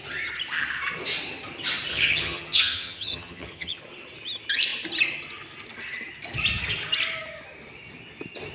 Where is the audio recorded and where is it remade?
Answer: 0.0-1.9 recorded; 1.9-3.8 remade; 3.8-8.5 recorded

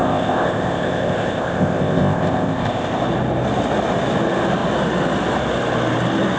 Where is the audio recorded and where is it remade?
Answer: 0.0-3.0 remade; 3.0-6.4 recorded

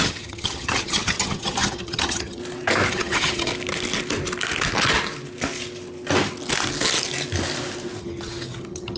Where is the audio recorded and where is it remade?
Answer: 0.0-2.4 remade; 2.4-2.9 recorded; 2.9-3.5 remade; 3.5-8.0 recorded; 8.0-9.0 remade

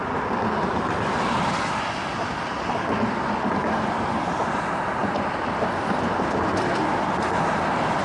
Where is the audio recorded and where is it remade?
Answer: 0.0-8.0 recorded